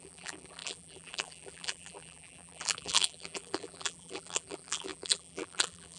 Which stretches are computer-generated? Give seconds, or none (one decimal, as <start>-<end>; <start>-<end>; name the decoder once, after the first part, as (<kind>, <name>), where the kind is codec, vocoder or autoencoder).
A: 0.0-6.0 (vocoder, BigVGAN v2)